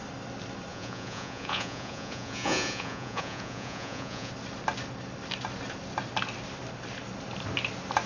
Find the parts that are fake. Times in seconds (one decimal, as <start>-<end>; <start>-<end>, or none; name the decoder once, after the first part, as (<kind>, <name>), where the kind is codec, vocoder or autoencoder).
0.7-4.3 (vocoder, Vocos)